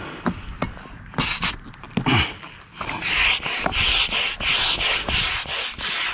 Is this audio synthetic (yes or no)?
no